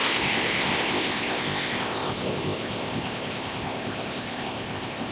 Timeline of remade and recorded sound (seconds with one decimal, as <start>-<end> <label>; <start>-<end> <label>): 0.0-5.1 remade